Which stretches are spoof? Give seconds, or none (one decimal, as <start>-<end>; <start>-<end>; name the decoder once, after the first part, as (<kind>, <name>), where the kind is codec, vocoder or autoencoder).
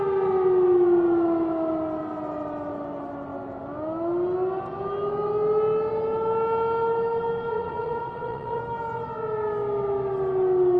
7.5-8.6 (vocoder, WaveNeXt)